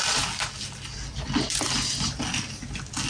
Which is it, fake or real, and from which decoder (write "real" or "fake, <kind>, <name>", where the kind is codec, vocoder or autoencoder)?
real